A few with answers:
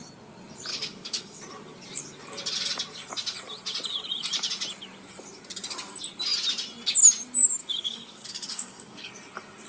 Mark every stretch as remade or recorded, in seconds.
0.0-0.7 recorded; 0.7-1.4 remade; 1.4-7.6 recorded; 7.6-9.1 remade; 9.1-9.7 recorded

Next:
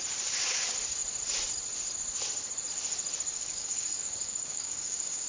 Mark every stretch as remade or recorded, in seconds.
0.0-3.3 recorded; 3.3-5.3 remade

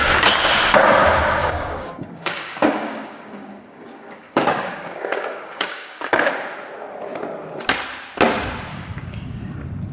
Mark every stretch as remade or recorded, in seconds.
0.0-1.4 recorded; 1.4-6.3 remade; 6.3-8.7 recorded; 8.7-9.4 remade; 9.4-9.9 recorded

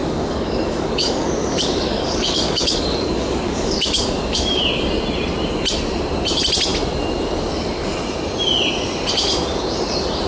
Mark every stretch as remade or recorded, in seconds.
0.0-4.6 remade; 4.6-10.3 recorded

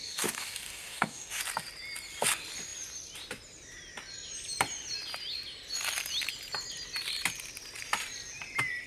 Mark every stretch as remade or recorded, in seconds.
0.0-1.4 remade; 1.4-8.9 recorded

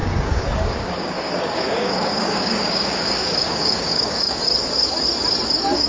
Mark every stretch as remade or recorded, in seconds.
0.0-4.5 remade; 4.5-5.5 recorded; 5.5-5.9 remade